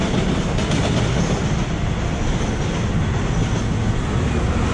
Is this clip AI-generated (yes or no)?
no